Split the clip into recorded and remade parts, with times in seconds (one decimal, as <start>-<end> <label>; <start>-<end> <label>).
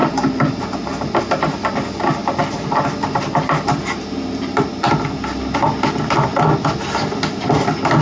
0.0-2.2 recorded; 2.2-4.9 remade; 4.9-8.0 recorded